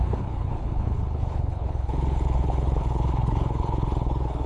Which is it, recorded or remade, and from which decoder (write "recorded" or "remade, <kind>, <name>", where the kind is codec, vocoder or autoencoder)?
remade, codec, HILCodec